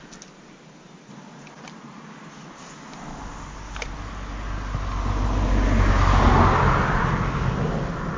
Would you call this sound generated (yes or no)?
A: no